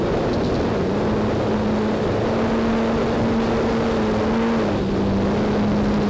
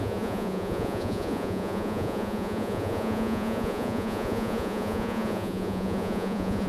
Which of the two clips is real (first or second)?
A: first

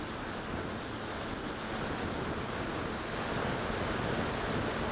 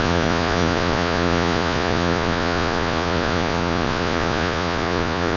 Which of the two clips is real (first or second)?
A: first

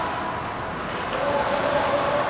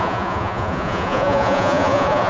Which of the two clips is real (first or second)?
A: first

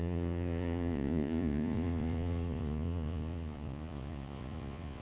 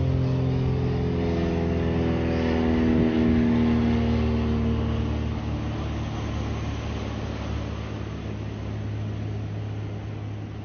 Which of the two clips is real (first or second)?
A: second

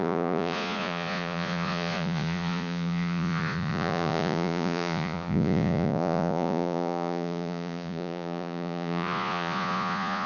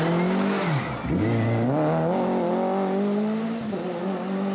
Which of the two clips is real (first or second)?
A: second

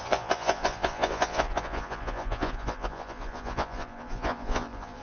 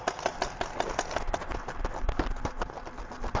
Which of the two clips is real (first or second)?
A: second